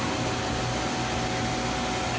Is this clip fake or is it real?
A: real